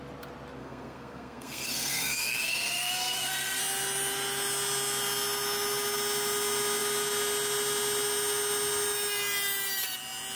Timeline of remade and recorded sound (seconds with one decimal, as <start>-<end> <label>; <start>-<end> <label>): 0.0-0.6 recorded; 0.6-3.6 remade; 3.6-10.4 recorded